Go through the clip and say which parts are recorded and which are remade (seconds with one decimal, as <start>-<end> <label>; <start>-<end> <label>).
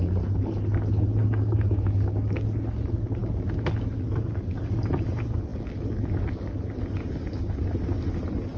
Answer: 0.0-1.2 recorded; 1.2-2.4 remade; 2.4-8.6 recorded